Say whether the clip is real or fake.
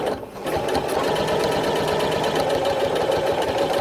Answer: real